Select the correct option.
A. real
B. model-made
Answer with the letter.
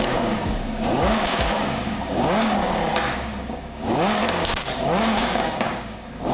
B